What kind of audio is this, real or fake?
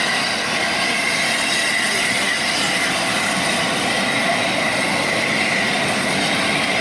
real